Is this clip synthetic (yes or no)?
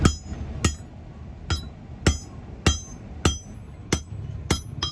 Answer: no